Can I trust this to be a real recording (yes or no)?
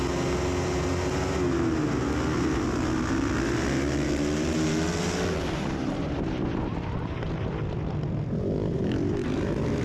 yes